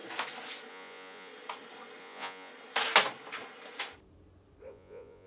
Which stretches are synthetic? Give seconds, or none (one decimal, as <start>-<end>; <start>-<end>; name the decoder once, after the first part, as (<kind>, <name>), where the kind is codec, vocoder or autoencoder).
0.7-1.3 (vocoder, Vocos); 2.0-2.5; 4.7-5.3